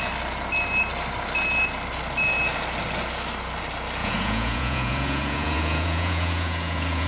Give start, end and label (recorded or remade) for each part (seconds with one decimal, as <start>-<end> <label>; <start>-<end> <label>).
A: 0.0-4.0 recorded; 4.0-7.1 remade